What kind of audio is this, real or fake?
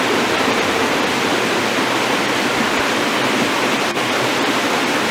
real